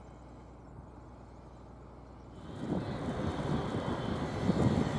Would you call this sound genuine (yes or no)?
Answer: yes